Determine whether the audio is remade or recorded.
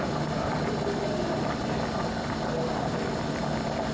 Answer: recorded